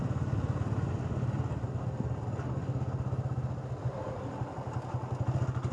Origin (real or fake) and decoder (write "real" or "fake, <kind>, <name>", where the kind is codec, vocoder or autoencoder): real